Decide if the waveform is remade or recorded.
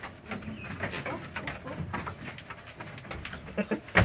recorded